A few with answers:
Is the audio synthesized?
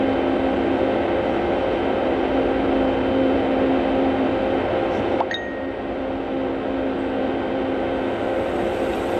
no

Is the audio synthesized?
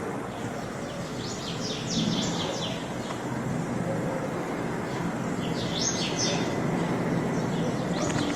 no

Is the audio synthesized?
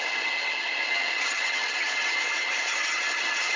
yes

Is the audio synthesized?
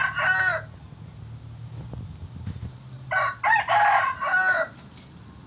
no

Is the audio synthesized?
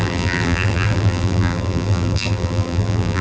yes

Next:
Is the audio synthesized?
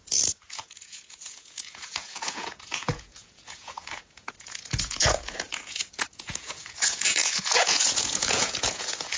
yes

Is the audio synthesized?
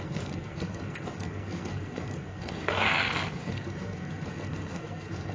yes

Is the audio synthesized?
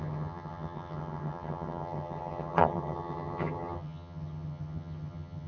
yes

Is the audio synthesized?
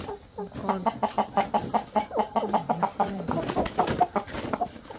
no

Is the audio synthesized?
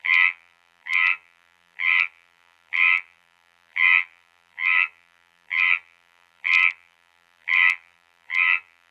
yes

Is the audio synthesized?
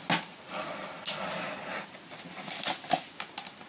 no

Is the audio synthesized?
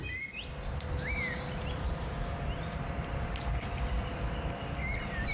no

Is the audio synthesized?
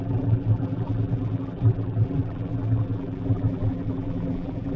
yes